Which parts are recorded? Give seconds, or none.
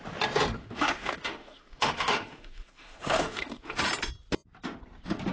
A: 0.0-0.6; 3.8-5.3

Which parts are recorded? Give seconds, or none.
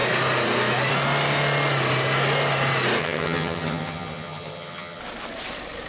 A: 0.0-3.0; 5.0-5.9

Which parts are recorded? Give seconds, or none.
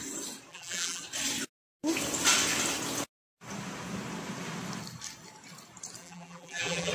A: 0.0-0.5; 1.0-6.0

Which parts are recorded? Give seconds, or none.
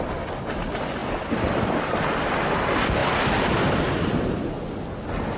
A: 0.0-5.4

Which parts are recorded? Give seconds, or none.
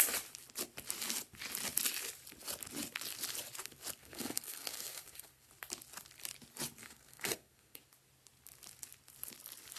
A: 0.0-4.0; 5.5-6.8; 7.8-9.8